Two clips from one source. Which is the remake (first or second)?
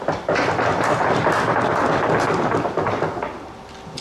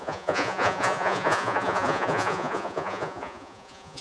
second